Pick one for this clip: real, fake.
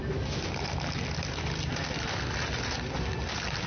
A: real